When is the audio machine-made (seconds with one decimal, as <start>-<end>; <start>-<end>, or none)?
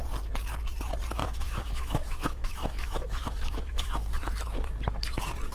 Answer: 1.2-4.3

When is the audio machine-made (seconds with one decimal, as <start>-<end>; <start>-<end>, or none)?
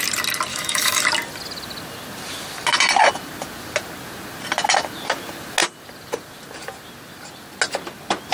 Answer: 0.5-1.0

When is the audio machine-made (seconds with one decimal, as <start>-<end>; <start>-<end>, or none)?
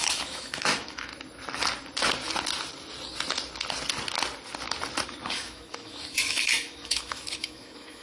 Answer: 0.0-1.1; 5.3-8.0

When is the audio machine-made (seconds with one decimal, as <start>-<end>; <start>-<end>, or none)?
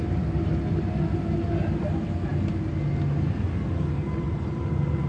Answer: none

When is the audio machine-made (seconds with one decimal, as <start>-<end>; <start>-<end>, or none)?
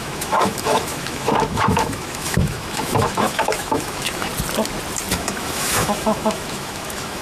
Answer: 0.0-4.3; 5.1-7.2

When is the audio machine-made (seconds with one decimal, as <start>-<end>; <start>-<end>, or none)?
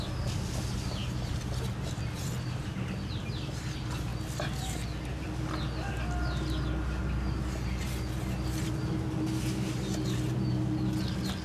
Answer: none